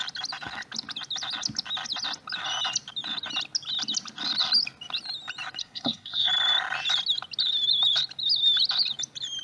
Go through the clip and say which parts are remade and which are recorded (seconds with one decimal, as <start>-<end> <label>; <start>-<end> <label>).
0.0-5.6 recorded; 5.6-6.3 remade; 6.3-9.4 recorded